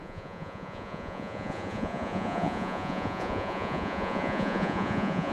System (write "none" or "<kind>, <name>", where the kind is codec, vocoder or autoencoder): vocoder, Vocos